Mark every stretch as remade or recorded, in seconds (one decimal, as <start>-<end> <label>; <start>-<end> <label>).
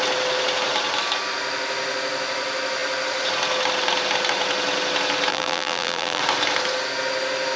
0.0-5.3 recorded; 5.3-6.2 remade; 6.2-7.6 recorded